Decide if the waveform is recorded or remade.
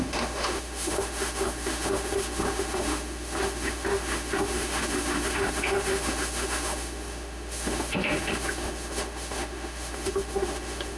remade